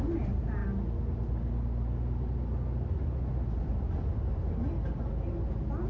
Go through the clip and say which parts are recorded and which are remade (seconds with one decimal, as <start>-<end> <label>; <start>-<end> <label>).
0.0-5.9 recorded